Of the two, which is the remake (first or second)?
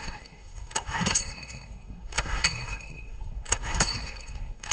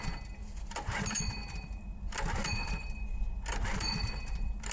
first